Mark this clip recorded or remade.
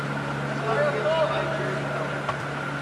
recorded